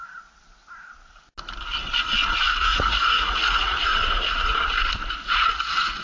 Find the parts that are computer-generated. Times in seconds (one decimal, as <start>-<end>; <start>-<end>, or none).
0.0-0.4; 2.6-3.9; 5.1-6.0